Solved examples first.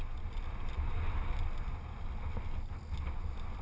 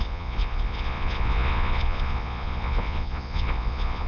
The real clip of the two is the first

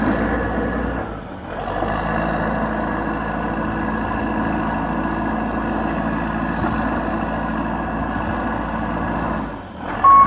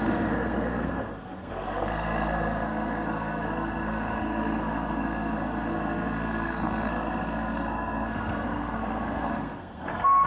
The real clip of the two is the first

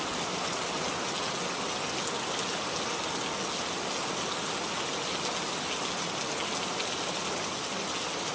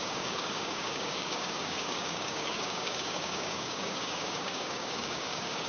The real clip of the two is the first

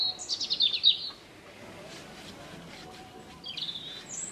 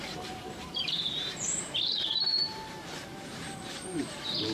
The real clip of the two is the first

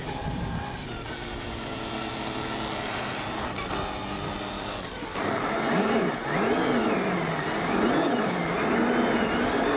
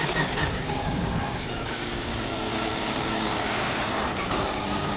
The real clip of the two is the first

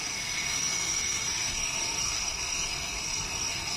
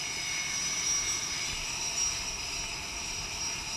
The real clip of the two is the second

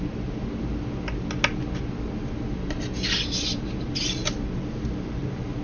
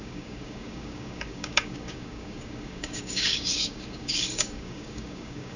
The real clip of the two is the first